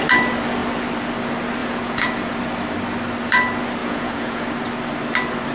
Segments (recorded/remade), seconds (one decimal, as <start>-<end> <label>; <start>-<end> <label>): 0.0-1.6 recorded; 1.6-2.4 remade; 2.4-3.8 recorded; 3.8-4.4 remade; 4.4-5.5 recorded